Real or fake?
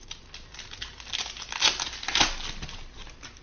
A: real